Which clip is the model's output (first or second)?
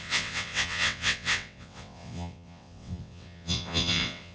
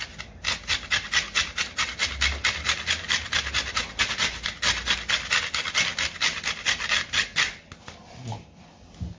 first